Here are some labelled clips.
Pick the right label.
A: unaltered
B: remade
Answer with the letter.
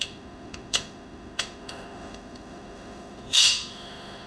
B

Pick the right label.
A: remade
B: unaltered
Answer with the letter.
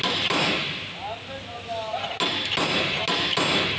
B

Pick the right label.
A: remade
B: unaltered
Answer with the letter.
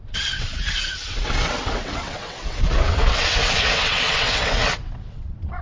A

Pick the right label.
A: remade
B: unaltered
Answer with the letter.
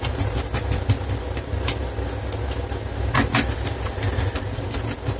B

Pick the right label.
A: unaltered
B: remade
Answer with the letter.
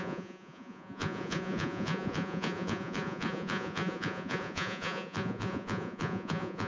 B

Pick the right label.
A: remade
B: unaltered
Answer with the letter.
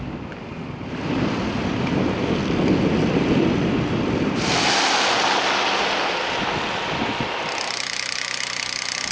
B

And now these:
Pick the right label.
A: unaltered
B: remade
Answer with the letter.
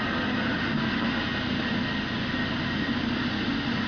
A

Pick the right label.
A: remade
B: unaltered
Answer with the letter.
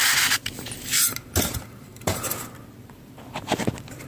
B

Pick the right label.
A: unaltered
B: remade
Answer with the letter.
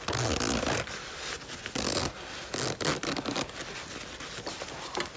A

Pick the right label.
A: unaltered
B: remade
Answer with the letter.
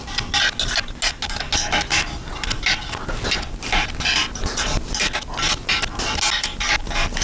A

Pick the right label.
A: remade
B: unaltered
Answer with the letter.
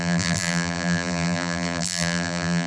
A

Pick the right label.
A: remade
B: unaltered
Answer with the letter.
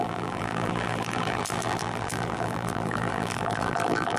A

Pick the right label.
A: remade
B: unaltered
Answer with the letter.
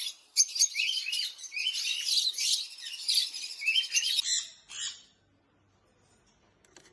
B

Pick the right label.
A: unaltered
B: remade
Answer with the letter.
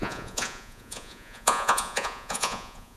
B